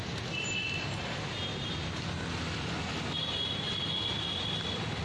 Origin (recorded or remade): recorded